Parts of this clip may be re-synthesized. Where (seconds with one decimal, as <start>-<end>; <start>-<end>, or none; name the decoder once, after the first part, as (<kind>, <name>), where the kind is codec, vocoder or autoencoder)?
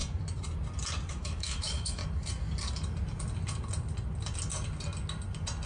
1.1-2.0 (autoencoder, DAC-VAE)